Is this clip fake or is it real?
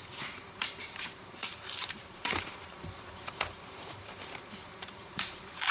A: fake